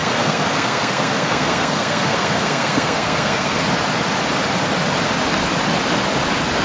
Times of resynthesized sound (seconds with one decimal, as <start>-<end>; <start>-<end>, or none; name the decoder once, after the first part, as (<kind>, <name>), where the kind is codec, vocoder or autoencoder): 0.0-3.6 (codec, SNAC)

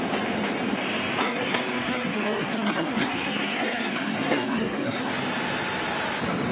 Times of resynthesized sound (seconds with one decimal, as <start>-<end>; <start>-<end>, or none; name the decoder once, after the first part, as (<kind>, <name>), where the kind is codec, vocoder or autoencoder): 1.2-5.1 (codec, SNAC)

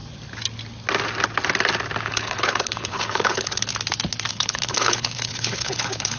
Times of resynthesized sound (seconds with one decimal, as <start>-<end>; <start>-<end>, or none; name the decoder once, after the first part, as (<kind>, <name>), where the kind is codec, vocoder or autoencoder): 2.1-3.7 (codec, HILCodec); 4.3-6.2

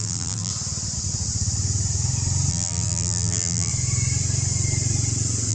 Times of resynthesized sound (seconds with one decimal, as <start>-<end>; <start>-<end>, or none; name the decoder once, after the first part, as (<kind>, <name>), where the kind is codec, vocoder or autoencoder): 0.0-0.5 (vocoder, BigVGAN v2); 2.5-3.7

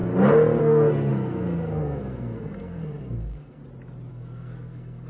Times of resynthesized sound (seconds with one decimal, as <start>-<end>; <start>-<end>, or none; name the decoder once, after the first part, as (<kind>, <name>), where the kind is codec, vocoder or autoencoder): 0.6-3.6 (codec, SNAC); 4.1-5.1

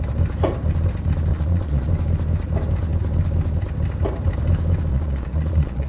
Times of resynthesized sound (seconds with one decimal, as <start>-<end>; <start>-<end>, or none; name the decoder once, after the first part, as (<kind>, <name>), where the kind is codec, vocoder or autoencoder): 1.3-1.9 (vocoder, Vocos); 4.9-5.9

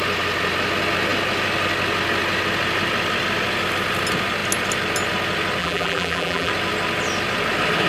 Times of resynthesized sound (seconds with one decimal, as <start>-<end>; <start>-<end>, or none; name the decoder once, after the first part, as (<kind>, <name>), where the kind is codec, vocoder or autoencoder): 5.6-6.5 (vocoder, BigVGAN v2)